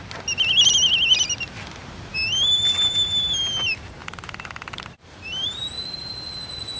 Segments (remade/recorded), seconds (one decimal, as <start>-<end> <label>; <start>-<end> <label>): 0.0-4.0 recorded; 4.0-5.8 remade; 5.8-6.8 recorded